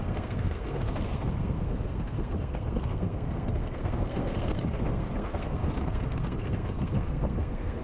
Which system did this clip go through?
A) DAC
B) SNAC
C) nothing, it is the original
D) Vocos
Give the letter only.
B